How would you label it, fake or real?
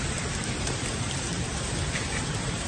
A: fake